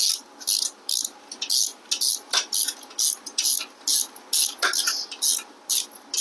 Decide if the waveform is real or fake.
real